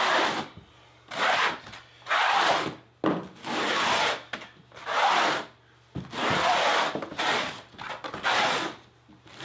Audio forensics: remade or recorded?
recorded